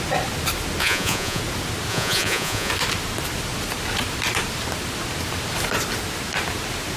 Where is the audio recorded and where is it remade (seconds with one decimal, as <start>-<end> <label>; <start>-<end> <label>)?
0.0-0.8 recorded; 0.8-1.4 remade; 1.4-1.9 recorded; 1.9-2.7 remade; 2.7-7.0 recorded